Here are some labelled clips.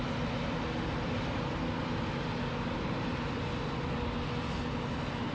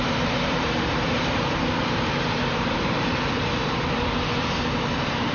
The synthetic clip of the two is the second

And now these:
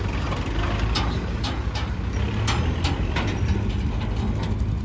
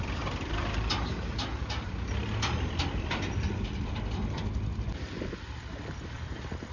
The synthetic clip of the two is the second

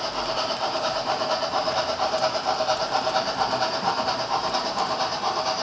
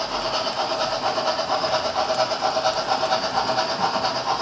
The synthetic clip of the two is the first